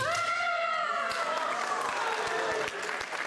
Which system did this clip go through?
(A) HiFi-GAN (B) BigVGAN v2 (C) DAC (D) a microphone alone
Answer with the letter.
D